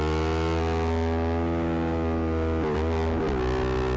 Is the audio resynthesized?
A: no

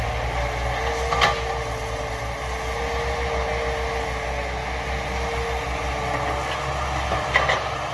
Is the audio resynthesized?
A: no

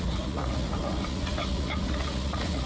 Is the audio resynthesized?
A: yes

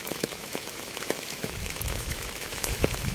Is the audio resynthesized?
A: yes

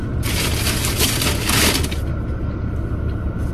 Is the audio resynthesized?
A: no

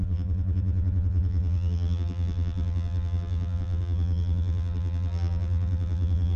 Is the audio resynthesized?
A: yes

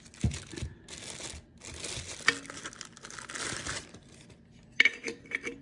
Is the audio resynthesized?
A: no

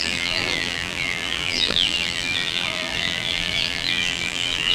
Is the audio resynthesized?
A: yes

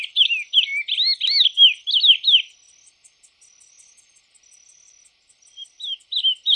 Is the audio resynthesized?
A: no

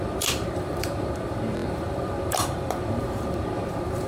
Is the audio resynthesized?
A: yes